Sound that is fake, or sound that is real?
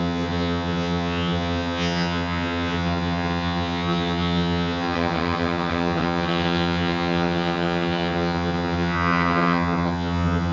fake